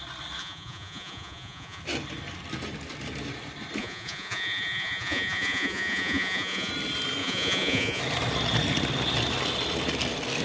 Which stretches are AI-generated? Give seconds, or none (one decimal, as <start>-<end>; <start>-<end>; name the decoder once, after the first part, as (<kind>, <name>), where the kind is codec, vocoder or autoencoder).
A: 0.4-1.8 (vocoder, Vocos); 3.8-6.7; 7.2-8.0